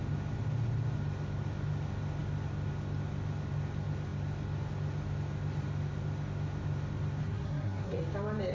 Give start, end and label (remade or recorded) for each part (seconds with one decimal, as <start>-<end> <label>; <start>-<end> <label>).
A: 0.0-7.2 recorded; 7.2-8.0 remade; 8.0-8.5 recorded